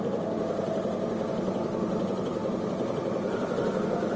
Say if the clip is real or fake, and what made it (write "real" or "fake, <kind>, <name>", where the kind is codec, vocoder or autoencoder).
real